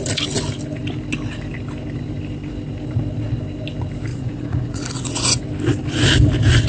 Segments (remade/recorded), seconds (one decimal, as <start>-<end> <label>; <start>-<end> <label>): 0.0-4.1 recorded; 4.1-5.4 remade; 5.4-6.7 recorded